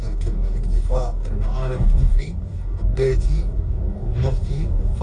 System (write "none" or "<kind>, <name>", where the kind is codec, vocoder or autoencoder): codec, DAC